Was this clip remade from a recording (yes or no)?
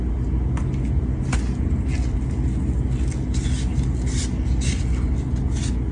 no